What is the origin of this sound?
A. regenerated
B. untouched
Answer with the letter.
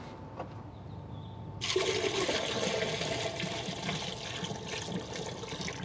B